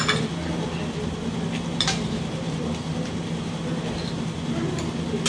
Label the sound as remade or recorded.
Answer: recorded